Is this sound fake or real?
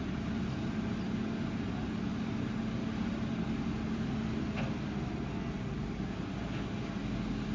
real